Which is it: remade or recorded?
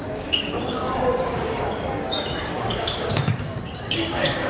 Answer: remade